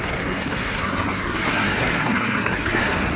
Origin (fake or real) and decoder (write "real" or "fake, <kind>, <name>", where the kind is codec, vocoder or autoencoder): fake, codec, SNAC